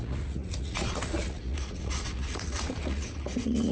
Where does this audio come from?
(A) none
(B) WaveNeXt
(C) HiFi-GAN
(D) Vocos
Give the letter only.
D